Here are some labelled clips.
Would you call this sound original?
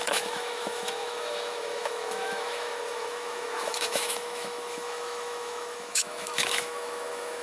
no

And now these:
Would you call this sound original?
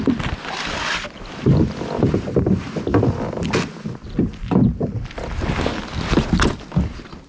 yes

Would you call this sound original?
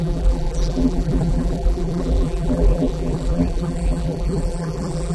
no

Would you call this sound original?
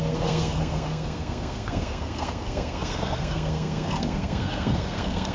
no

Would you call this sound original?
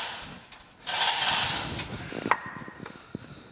yes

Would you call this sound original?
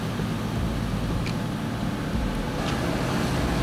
yes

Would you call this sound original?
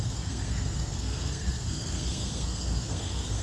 no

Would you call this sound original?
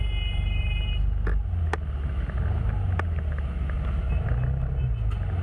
yes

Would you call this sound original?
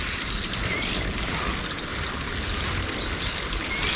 yes